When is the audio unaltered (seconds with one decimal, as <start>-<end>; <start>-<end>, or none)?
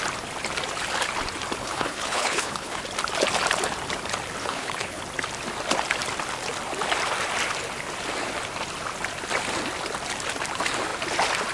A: 0.0-1.6; 2.8-4.4; 5.0-11.5